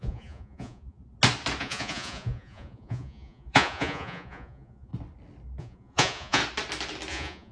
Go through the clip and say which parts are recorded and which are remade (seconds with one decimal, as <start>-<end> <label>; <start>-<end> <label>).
0.0-1.0 remade; 1.0-1.6 recorded; 1.6-4.9 remade; 4.9-5.6 recorded; 5.6-6.4 remade; 6.4-7.1 recorded; 7.1-7.5 remade